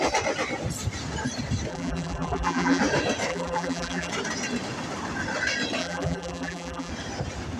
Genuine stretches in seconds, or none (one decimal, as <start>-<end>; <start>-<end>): 0.0-1.7; 2.8-3.3; 4.1-5.8; 6.9-7.6